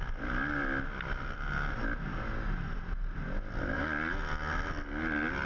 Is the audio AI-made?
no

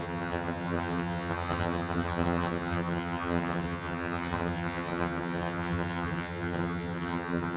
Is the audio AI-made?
yes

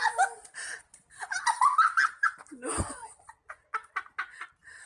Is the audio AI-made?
no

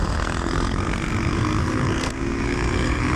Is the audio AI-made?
yes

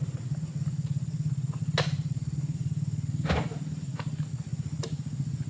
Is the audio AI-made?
no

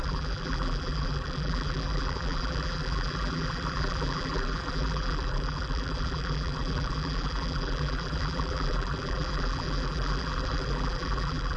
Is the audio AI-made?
yes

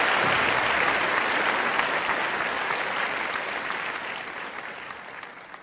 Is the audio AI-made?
no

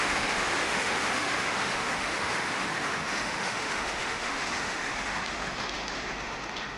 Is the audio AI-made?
yes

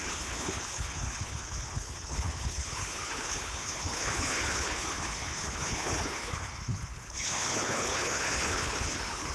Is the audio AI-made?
yes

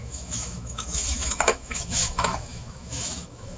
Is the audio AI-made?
yes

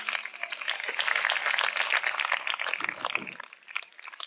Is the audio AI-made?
no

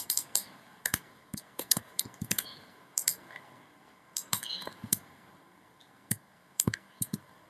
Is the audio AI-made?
yes